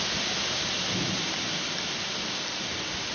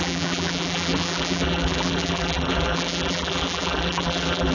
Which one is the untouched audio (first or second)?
first